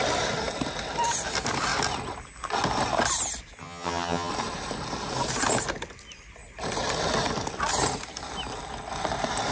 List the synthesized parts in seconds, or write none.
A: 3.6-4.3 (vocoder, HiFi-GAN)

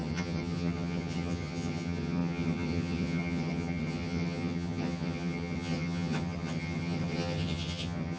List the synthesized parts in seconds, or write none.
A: 0.0-8.2 (vocoder, HiFi-GAN)

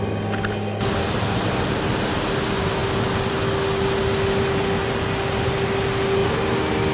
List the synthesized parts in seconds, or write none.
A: none

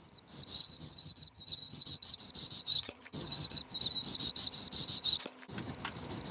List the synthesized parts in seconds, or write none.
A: 0.6-2.2 (vocoder, HiFi-GAN); 2.7-3.6

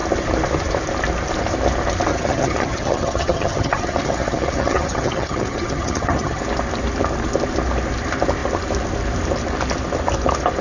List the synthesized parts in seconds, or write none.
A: 2.1-6.4 (vocoder, HiFi-GAN)